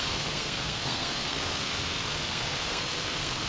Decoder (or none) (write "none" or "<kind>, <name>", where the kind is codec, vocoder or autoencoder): codec, SNAC